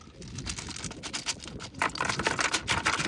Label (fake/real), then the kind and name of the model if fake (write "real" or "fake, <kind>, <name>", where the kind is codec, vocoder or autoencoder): real